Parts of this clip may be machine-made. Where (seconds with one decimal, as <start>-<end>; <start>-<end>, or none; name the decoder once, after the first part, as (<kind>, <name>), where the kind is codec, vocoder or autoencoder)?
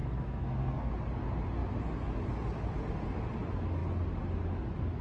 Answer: 0.0-0.9 (codec, SNAC)